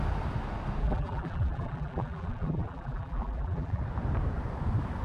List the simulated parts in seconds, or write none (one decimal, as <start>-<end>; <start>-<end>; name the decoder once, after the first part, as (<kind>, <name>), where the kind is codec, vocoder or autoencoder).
0.8-3.8 (vocoder, BigVGAN v2)